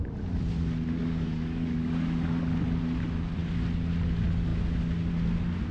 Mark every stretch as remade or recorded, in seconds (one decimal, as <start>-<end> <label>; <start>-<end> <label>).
0.0-1.0 recorded; 1.0-2.5 remade; 2.5-5.7 recorded